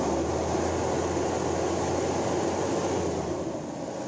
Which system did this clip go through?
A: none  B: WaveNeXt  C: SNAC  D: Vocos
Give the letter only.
A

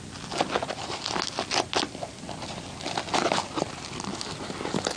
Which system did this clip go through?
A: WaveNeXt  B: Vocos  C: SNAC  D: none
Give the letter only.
D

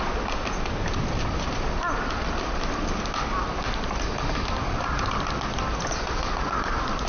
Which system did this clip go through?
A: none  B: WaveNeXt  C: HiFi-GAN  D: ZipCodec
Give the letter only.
A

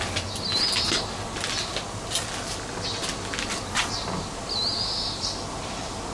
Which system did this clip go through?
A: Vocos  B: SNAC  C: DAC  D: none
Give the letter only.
D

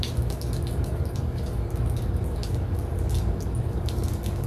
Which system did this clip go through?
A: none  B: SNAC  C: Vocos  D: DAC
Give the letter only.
D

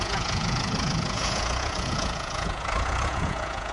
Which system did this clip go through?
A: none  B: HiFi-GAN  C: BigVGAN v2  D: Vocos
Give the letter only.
D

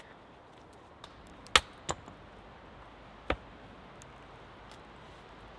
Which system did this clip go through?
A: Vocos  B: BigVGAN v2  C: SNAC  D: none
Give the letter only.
D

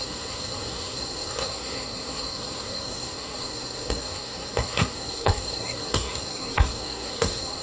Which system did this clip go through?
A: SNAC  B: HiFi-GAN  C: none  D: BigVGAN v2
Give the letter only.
A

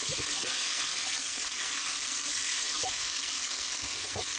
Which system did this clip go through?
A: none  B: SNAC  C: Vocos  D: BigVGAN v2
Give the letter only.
B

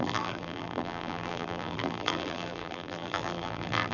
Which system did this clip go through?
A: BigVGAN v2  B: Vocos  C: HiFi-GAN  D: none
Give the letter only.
A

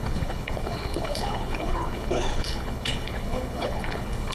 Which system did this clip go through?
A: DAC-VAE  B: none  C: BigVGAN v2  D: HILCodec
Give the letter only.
D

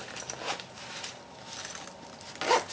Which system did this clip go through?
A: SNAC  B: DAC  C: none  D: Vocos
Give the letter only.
C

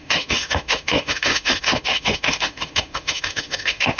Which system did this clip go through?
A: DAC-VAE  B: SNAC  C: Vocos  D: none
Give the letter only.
A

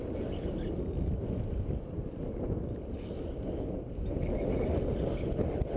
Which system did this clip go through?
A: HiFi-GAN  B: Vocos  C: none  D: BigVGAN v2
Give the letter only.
C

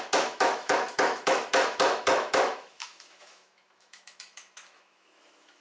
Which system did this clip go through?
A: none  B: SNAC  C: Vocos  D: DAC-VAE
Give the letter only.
D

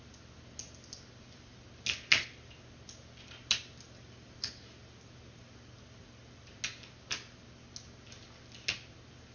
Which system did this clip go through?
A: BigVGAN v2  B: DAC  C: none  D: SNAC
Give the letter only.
C